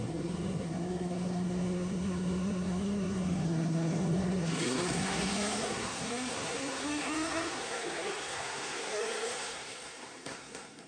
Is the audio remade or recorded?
remade